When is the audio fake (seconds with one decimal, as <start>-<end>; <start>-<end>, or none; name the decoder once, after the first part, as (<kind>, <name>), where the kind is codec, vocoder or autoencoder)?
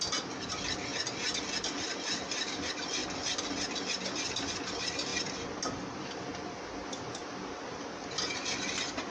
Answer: 7.2-7.8 (vocoder, BigVGAN v2)